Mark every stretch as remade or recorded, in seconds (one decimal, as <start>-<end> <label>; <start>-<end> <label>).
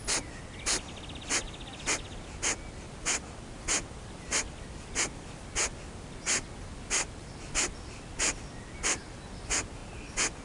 0.0-10.4 recorded